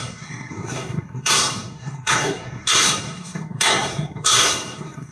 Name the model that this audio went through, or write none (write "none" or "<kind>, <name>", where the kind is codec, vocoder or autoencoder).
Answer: codec, SNAC